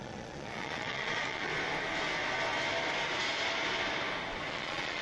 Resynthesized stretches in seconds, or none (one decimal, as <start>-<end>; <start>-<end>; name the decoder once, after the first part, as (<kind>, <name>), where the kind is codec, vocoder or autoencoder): 0.0-1.5 (vocoder, Vocos); 4.5-5.0